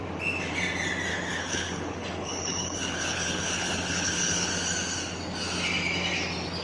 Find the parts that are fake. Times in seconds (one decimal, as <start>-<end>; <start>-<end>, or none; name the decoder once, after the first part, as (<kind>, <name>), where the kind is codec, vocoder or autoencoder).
1.1-4.5 (codec, HILCodec)